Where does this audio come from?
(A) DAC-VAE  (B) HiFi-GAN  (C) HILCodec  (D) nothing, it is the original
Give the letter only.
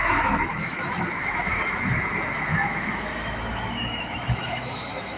A